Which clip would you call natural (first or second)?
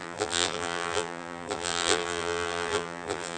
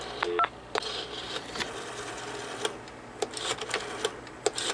second